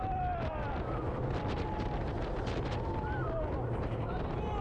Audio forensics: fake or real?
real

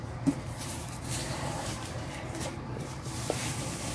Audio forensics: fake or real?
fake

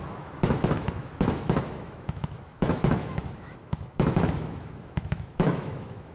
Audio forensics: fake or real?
fake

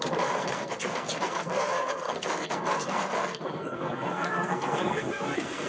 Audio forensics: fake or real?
fake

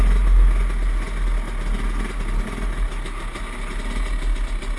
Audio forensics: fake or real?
real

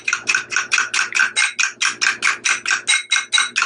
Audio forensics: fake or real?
real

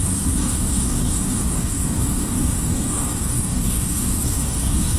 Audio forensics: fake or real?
fake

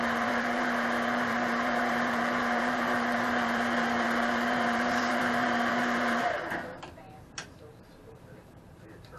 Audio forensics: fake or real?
fake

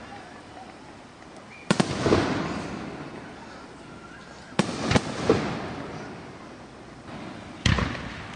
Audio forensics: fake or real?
real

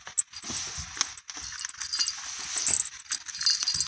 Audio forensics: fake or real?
real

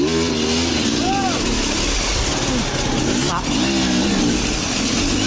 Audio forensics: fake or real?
real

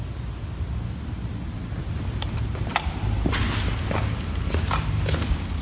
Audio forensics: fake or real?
real